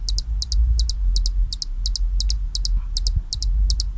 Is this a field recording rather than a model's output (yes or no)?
yes